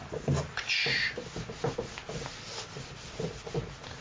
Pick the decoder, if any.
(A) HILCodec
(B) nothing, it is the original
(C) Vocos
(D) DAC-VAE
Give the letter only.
B